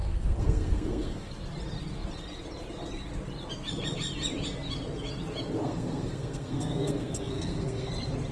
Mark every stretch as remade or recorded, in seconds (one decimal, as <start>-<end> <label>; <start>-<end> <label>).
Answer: 0.0-1.3 remade; 1.3-5.6 recorded; 5.6-7.9 remade; 7.9-8.3 recorded